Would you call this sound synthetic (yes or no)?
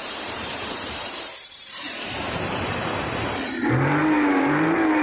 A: yes